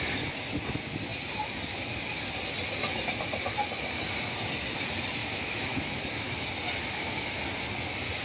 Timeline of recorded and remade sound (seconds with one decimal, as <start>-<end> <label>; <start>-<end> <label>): 0.0-5.2 recorded; 5.2-6.3 remade; 6.3-6.9 recorded; 6.9-7.4 remade; 7.4-8.2 recorded